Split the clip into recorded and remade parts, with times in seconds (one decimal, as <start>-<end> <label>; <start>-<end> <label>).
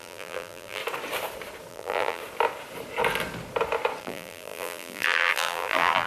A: 0.0-0.8 remade; 0.8-1.7 recorded; 1.7-2.2 remade; 2.2-4.0 recorded; 4.0-6.1 remade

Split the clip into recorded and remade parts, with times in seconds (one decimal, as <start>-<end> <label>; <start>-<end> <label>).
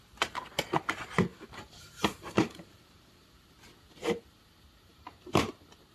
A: 0.0-1.3 recorded; 1.3-3.3 remade; 3.3-4.9 recorded; 4.9-5.5 remade; 5.5-5.9 recorded